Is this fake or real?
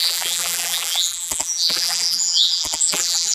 fake